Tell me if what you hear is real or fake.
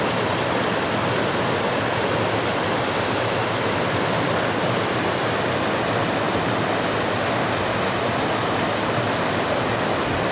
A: real